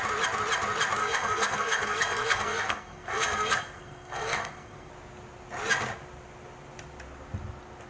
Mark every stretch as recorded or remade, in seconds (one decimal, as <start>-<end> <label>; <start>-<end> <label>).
0.0-1.0 recorded; 1.0-4.9 remade; 4.9-7.9 recorded